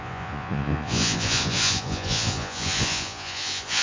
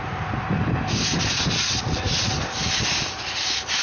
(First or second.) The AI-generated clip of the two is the first